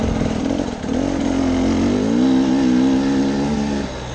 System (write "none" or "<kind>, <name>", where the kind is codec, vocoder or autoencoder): none